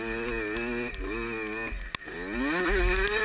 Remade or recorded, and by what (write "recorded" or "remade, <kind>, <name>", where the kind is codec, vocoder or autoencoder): recorded